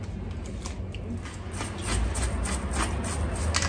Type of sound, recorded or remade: recorded